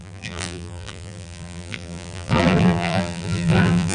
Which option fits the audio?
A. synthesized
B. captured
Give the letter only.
A